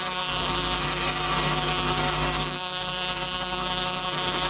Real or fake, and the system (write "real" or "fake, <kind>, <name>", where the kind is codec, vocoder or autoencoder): fake, codec, SNAC